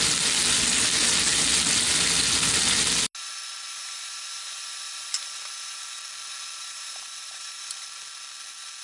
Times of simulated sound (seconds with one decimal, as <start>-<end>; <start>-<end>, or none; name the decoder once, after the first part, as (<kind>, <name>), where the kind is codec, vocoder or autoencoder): 3.8-5.1 (vocoder, BigVGAN v2); 6.6-7.7